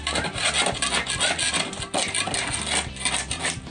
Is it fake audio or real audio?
real